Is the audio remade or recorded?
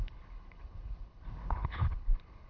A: remade